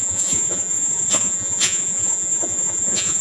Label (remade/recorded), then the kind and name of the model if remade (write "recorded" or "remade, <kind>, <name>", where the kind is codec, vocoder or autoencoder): remade, vocoder, Vocos